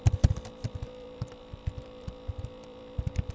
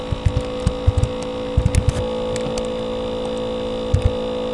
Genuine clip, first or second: second